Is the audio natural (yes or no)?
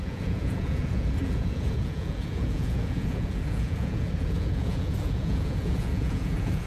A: no